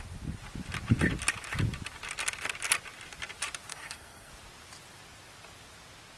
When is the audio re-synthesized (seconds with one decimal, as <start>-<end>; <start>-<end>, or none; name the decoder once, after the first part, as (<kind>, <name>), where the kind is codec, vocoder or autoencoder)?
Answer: 3.7-4.3 (codec, SNAC)